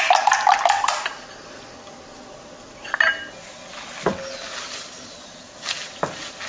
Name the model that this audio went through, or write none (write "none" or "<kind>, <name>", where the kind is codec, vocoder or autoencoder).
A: none